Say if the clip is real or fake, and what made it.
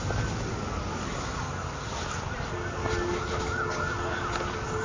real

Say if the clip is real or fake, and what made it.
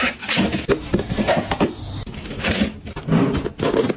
real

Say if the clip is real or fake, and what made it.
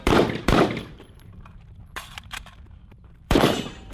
fake, vocoder, BigVGAN v2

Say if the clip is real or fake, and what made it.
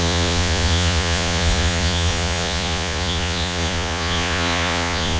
fake, vocoder, Vocos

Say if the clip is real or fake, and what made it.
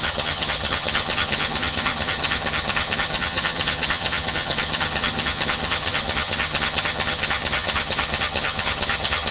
fake, vocoder, HiFi-GAN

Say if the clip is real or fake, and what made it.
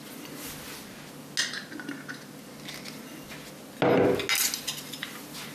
real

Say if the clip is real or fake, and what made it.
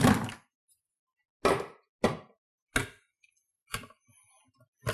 real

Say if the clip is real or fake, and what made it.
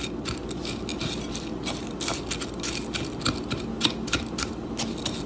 real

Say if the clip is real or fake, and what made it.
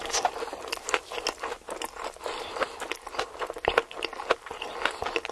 real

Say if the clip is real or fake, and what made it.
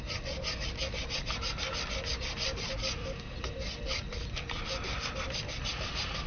real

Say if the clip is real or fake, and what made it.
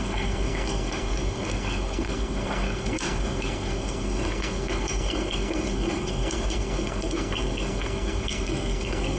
fake, codec, SNAC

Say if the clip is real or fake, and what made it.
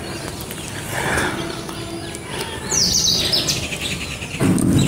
real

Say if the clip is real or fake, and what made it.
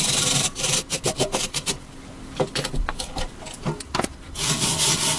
fake, vocoder, BigVGAN v2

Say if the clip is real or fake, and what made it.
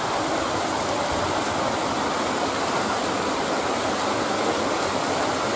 real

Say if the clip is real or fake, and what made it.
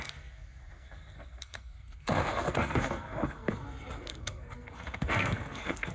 fake, codec, SNAC